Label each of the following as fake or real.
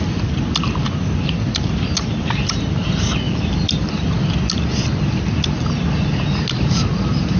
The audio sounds real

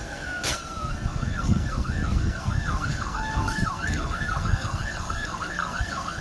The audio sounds fake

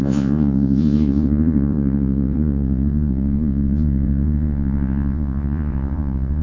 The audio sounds fake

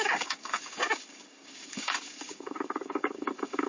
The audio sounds fake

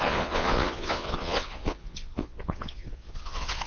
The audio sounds fake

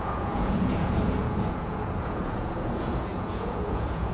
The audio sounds fake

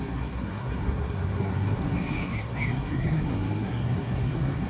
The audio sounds fake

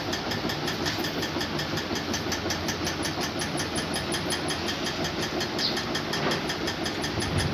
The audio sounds real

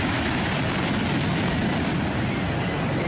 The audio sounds real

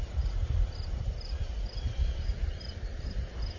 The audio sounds fake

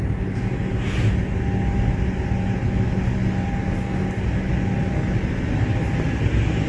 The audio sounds real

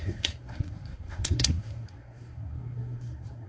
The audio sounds fake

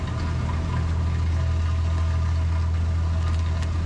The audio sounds real